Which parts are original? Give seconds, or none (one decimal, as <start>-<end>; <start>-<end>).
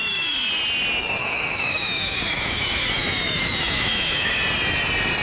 0.5-1.2; 4.3-5.2